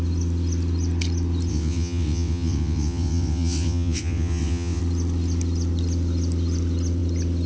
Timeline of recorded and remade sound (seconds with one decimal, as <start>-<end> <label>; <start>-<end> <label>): 0.0-1.5 recorded; 1.5-4.8 remade; 4.8-7.5 recorded